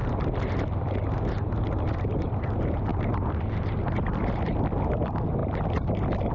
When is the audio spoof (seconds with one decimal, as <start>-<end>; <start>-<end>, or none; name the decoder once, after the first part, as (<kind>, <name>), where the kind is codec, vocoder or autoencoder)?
none